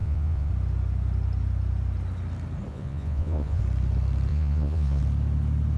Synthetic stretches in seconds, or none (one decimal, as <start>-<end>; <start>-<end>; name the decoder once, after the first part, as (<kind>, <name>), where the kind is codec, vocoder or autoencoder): 0.0-0.5 (vocoder, Vocos); 2.7-3.6; 4.3-5.0